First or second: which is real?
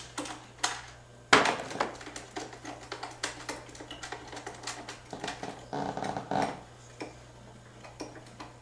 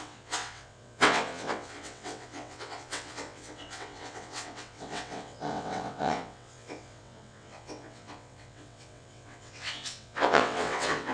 first